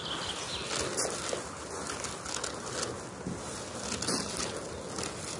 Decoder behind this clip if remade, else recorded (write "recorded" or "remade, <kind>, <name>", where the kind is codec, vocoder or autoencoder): recorded